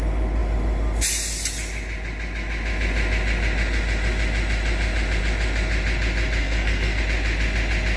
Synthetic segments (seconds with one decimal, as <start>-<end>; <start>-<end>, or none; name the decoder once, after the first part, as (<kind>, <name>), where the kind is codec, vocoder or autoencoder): 6.4-7.0 (codec, SNAC)

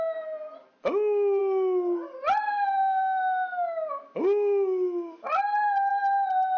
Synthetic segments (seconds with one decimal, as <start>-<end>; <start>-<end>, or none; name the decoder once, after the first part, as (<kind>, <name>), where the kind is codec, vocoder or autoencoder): none

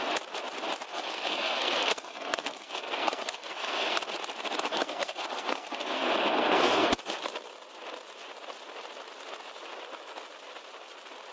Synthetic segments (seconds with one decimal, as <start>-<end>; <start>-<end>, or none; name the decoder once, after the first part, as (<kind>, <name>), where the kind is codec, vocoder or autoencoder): 0.9-4.0 (codec, SNAC); 4.7-6.9